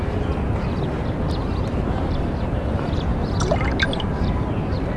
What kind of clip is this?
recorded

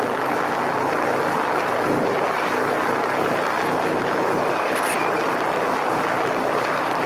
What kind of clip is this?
recorded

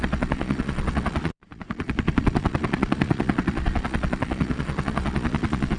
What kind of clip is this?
remade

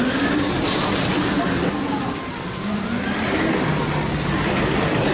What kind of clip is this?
recorded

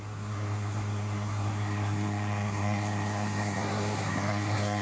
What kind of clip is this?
remade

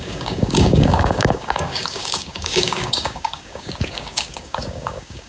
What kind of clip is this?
remade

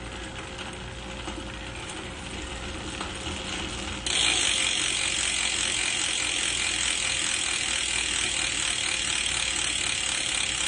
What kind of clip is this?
recorded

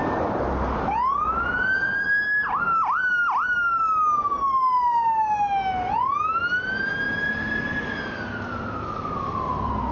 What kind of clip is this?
recorded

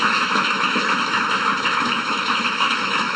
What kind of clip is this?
remade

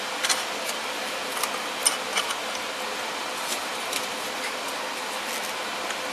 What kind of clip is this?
recorded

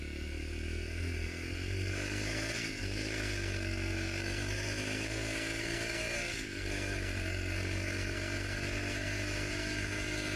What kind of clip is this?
remade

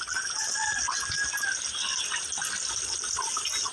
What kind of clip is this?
recorded